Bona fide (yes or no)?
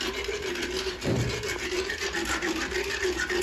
yes